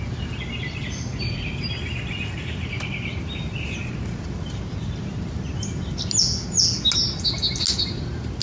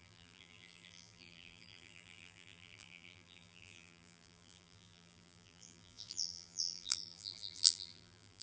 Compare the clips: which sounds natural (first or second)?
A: first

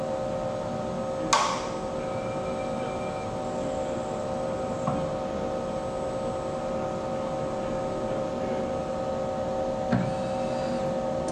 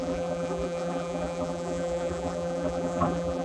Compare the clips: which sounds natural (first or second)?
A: first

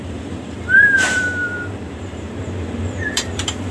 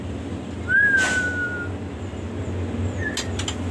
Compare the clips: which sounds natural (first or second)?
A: second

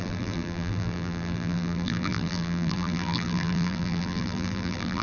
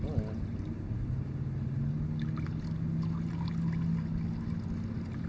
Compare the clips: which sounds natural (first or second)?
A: second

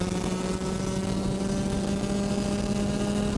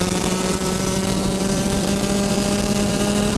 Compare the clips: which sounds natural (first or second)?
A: first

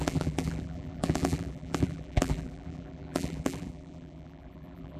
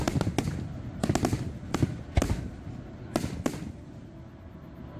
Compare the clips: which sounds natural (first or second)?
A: second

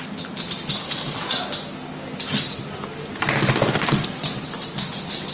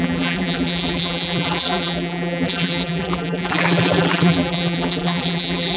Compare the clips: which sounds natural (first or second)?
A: first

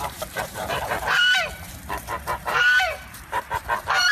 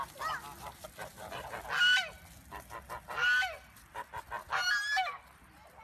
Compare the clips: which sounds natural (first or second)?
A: second